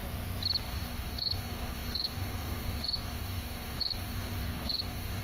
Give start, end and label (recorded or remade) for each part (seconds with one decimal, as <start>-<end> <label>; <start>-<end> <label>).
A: 0.0-0.6 recorded; 0.6-5.2 remade